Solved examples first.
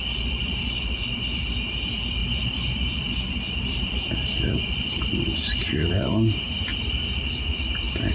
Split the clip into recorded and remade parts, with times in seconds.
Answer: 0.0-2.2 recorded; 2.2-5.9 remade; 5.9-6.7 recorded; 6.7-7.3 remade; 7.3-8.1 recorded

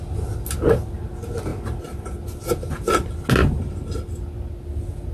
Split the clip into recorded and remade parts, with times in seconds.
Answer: 0.0-5.1 recorded